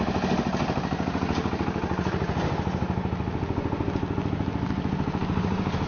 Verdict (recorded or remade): recorded